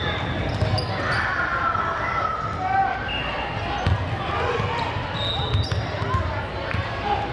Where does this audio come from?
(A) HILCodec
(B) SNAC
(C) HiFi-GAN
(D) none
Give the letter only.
D